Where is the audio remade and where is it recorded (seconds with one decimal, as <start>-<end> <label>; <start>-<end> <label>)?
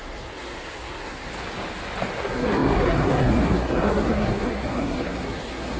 0.0-1.3 remade; 1.3-2.1 recorded; 2.1-5.8 remade